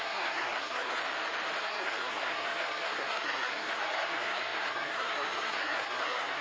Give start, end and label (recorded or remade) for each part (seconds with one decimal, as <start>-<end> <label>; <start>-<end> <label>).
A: 0.0-1.0 remade; 1.0-1.6 recorded; 1.6-6.4 remade

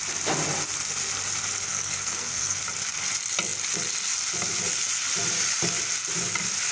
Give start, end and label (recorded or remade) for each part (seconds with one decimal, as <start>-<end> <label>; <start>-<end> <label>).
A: 0.0-1.7 recorded; 1.7-2.6 remade; 2.6-6.7 recorded